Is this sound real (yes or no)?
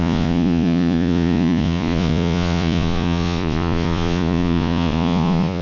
no